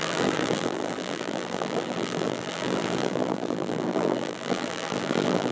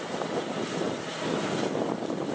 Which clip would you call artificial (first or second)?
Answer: first